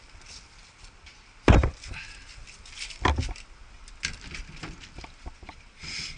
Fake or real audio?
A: real